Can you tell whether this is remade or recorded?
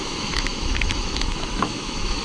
remade